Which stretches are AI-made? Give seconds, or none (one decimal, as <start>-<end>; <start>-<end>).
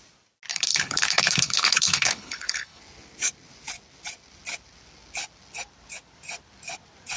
0.5-2.8